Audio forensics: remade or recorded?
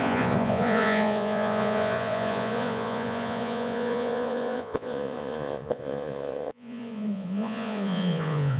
remade